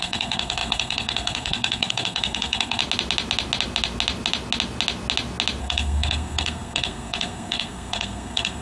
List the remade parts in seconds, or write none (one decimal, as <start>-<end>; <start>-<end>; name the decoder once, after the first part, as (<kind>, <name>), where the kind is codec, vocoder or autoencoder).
0.0-2.8 (codec, SNAC); 5.6-8.6